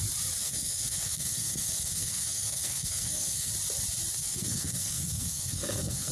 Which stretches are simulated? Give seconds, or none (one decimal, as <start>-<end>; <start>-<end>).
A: 0.4-3.5; 4.2-6.1